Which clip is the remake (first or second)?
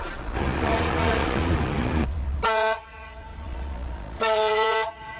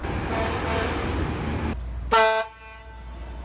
first